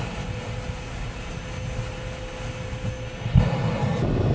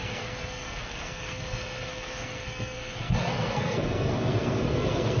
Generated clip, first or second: second